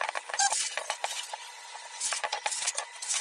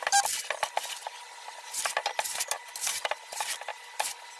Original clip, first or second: second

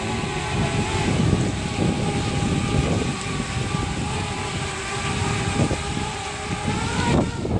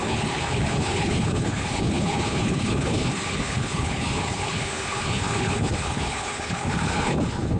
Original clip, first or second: first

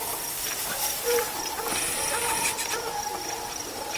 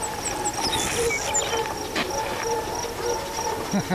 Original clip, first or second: second